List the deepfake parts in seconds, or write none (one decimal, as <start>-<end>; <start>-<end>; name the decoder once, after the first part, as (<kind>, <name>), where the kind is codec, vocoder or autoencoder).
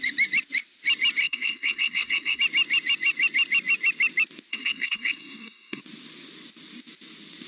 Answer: 1.2-2.4 (codec, SNAC); 4.5-5.8